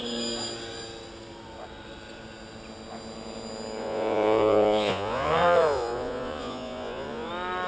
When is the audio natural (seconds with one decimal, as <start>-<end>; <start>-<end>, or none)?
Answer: 0.0-3.8; 7.3-7.7